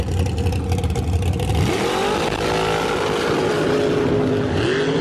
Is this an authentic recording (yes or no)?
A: yes